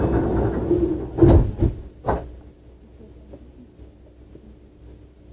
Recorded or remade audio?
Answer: recorded